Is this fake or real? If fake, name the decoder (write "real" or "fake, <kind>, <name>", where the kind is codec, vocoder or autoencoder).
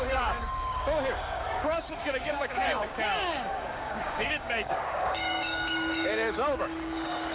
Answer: fake, codec, DAC